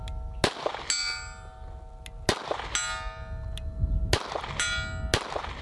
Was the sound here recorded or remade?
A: recorded